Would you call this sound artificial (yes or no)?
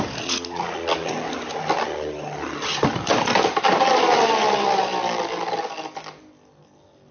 no